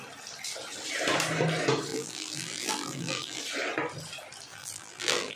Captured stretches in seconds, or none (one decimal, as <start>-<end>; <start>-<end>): 0.0-1.9; 3.4-4.5